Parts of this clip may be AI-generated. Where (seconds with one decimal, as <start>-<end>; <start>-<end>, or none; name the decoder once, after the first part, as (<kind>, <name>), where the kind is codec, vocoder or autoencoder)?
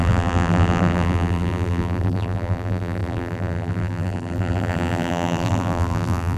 0.0-6.4 (vocoder, BigVGAN v2)